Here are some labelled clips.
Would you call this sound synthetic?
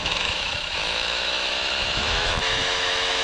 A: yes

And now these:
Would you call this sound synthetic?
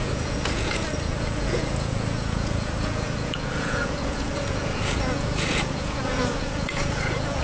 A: yes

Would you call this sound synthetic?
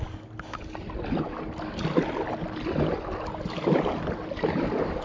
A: no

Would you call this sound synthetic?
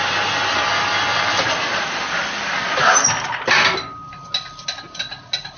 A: no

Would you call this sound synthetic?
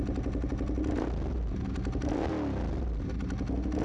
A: no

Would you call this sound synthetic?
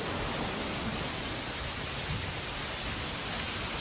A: no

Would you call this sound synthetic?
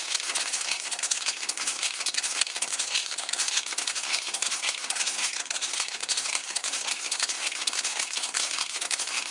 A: yes